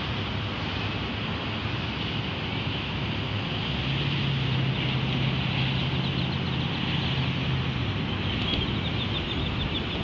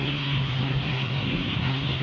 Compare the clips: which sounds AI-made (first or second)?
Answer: second